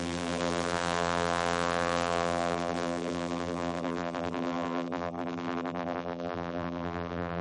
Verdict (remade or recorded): remade